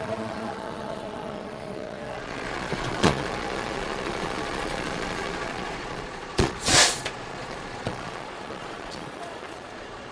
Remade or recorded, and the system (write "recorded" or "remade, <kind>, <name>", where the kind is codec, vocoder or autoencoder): remade, vocoder, Vocos